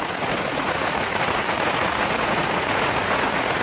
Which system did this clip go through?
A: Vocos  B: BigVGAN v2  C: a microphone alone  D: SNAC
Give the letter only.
A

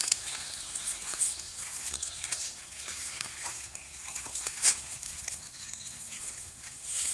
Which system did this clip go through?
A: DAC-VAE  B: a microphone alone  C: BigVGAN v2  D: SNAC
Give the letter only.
D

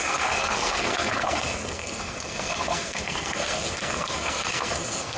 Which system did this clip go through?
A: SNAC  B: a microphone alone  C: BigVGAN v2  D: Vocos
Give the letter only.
A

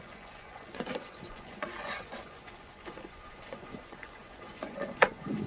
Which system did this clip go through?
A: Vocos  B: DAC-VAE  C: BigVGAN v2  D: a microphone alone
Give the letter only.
A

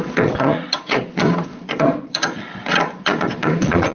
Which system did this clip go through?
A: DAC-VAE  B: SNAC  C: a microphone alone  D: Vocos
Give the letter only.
D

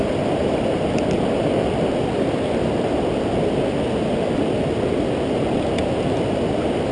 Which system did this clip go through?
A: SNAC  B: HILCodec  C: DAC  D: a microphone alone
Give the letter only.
D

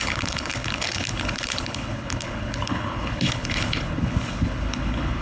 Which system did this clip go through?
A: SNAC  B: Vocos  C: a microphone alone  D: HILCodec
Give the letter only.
D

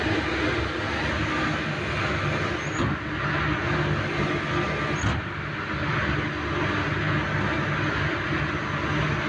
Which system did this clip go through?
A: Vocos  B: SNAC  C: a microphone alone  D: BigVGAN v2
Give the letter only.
C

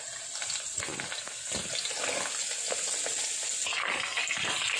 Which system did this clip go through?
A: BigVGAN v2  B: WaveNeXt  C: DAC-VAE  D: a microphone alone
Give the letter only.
D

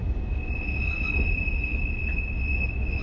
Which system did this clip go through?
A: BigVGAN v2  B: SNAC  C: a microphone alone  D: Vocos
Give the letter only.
C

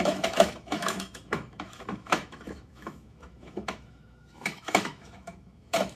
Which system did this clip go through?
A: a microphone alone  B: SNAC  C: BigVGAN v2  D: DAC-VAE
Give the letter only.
D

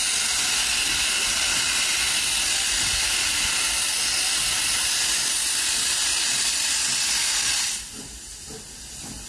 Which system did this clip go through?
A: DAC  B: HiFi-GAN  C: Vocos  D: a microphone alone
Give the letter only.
D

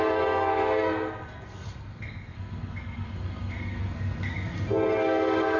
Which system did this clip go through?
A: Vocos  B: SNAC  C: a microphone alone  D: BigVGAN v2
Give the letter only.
B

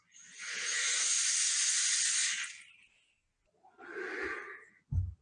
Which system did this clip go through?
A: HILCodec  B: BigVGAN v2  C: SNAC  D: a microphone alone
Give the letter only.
D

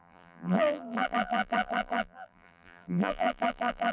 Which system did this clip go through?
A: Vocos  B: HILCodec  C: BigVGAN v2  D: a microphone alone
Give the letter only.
C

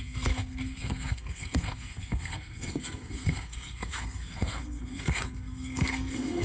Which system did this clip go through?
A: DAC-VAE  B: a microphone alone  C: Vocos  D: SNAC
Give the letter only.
D